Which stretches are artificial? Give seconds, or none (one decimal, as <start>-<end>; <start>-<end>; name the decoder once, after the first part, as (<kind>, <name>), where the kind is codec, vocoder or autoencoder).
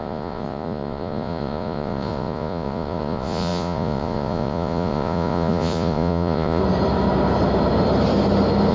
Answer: 0.0-6.6 (vocoder, Vocos)